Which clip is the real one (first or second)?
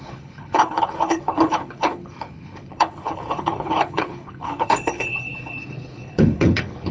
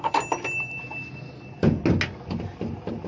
second